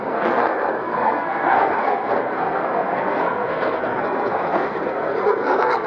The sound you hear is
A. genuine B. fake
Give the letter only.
B